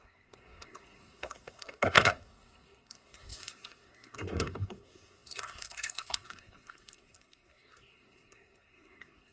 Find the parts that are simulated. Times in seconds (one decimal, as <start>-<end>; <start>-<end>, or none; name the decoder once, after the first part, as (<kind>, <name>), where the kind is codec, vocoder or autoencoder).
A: 0.0-9.3 (codec, SNAC)

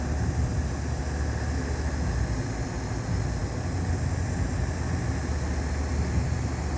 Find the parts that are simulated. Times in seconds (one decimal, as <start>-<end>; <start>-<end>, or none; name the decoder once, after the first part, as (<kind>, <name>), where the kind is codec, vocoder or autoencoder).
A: none

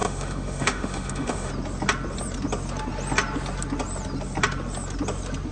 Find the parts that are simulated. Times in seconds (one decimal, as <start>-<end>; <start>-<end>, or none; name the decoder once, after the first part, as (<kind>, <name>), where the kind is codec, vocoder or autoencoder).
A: 0.0-1.5 (autoencoder, DAC-VAE)

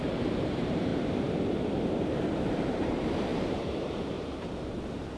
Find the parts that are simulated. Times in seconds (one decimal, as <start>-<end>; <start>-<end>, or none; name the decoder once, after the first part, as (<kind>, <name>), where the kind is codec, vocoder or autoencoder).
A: 0.0-0.9 (vocoder, BigVGAN v2); 2.5-5.2

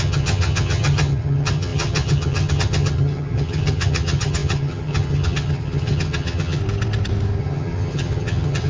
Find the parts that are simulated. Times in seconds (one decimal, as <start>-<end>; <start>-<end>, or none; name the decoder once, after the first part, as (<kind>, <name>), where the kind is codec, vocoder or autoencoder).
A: 0.0-6.6 (vocoder, HiFi-GAN); 7.4-8.7

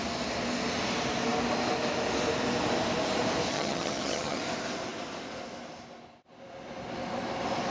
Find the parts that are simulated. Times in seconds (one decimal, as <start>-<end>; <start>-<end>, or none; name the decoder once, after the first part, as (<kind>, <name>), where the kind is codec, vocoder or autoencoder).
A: 3.5-4.4 (vocoder, HiFi-GAN)